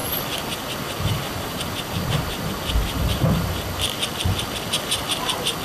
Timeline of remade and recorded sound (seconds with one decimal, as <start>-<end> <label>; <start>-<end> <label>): 0.0-5.6 recorded